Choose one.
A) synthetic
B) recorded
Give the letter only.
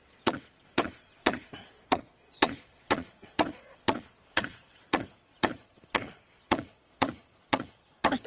A